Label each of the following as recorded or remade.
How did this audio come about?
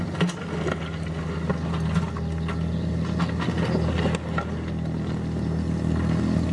recorded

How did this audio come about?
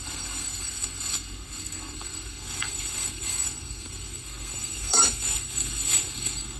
remade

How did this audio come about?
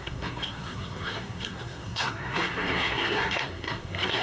remade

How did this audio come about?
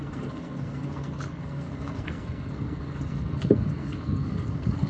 remade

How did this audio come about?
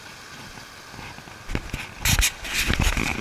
recorded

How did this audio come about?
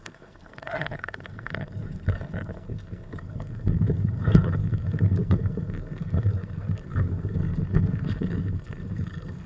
remade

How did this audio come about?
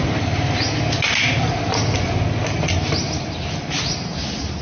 recorded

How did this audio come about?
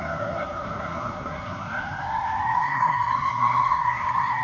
remade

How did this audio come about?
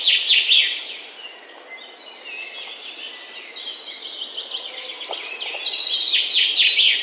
recorded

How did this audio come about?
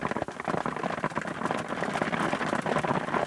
recorded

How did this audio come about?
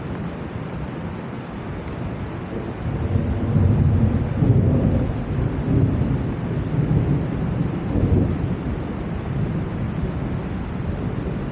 recorded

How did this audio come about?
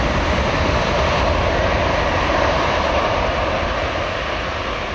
recorded